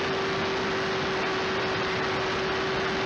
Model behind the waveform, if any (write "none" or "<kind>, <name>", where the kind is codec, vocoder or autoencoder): none